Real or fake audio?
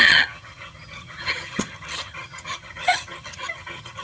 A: fake